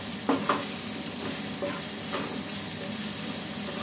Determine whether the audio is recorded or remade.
recorded